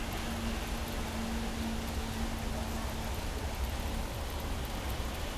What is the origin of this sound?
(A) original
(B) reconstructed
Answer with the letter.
A